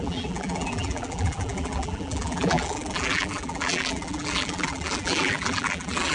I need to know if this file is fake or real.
fake